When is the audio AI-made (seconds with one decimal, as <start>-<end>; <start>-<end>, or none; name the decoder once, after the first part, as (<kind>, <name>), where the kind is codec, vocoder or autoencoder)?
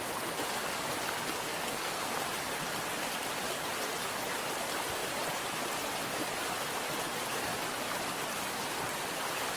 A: 1.5-2.1 (codec, SNAC)